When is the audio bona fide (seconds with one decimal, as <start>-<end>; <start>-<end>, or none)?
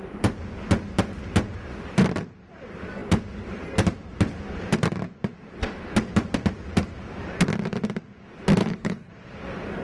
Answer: 0.0-8.6; 9.1-9.8